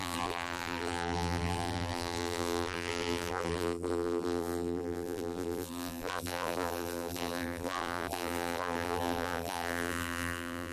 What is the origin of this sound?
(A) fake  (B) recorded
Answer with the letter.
A